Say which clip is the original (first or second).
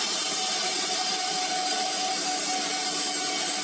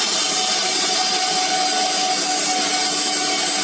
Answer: second